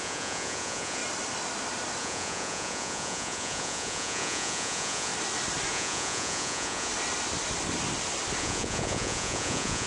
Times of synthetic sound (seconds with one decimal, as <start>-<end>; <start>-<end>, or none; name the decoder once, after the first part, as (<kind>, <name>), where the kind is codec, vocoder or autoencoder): 0.0-1.0 (vocoder, Vocos); 2.0-5.1; 5.7-6.9; 8.4-9.9